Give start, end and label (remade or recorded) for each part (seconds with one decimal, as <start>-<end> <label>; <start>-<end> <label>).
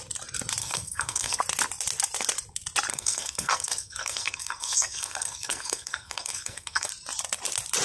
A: 0.0-0.6 recorded; 0.6-1.4 remade; 1.4-2.9 recorded; 2.9-6.9 remade; 6.9-7.8 recorded